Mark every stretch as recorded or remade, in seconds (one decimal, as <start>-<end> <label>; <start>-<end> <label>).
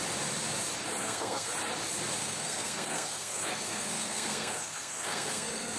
0.0-1.0 recorded; 1.0-1.5 remade; 1.5-2.2 recorded; 2.2-5.8 remade